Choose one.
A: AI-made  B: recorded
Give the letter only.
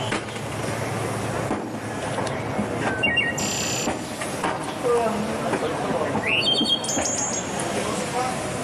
B